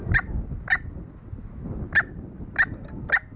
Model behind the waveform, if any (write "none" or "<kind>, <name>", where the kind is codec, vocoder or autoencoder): none